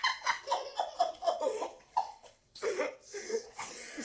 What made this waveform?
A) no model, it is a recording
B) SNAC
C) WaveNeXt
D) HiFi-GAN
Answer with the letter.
C